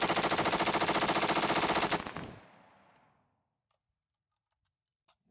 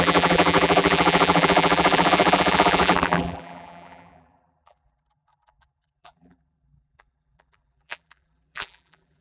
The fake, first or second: second